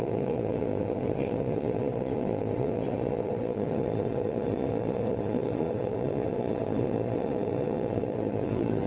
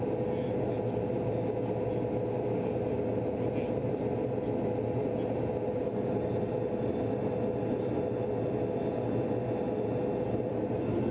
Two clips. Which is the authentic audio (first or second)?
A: second